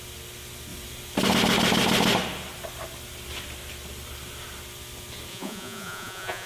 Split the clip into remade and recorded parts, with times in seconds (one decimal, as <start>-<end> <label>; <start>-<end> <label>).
0.0-5.3 recorded; 5.3-6.5 remade